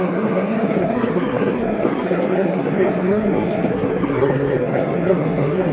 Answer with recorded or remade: remade